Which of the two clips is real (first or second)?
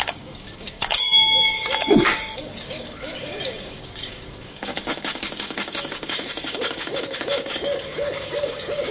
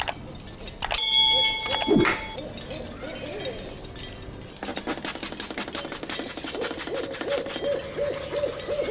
second